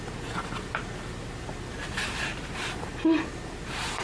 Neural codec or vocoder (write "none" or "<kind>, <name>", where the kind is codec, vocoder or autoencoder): none